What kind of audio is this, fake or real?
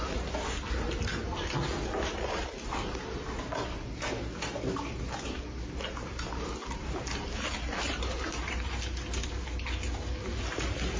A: real